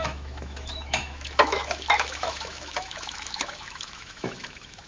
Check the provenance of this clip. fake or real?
fake